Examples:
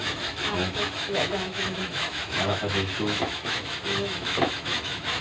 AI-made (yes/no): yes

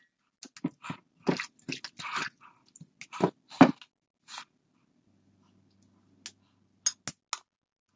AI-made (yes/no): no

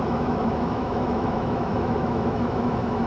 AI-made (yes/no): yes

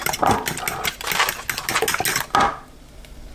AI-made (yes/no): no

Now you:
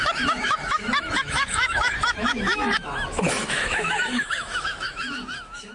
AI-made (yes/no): yes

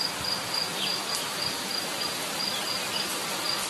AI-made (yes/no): no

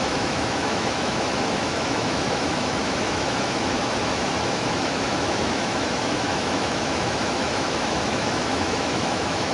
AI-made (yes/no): yes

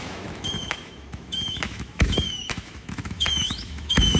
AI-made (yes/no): yes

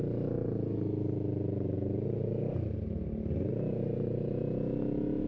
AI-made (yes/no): no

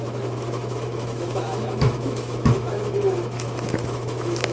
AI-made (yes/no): yes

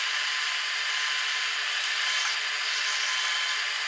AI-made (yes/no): no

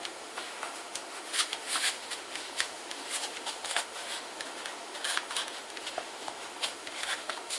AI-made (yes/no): yes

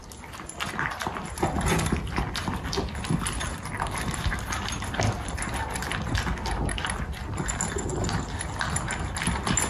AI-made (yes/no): no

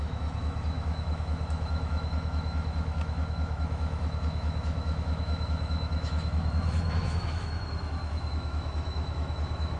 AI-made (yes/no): yes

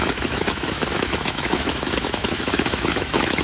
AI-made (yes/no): yes